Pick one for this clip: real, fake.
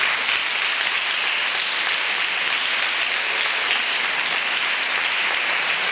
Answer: real